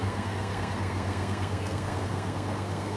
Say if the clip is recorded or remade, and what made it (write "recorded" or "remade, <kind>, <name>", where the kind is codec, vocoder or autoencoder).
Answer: remade, codec, SNAC